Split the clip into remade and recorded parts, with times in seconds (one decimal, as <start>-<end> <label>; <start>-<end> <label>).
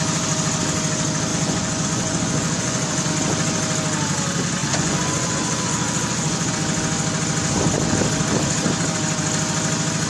0.0-1.3 recorded; 1.3-3.1 remade; 3.1-4.6 recorded; 4.6-6.5 remade; 6.5-10.1 recorded